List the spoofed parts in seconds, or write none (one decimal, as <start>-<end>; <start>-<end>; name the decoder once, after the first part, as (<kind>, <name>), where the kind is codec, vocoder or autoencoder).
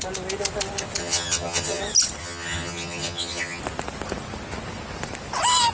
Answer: 1.0-1.8 (vocoder, HiFi-GAN); 2.2-3.6